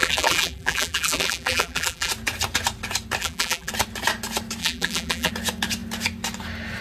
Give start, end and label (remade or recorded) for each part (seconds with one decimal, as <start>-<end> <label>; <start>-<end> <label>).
0.0-2.1 remade; 2.1-3.2 recorded; 3.2-3.7 remade; 3.7-4.6 recorded; 4.6-5.3 remade; 5.3-6.8 recorded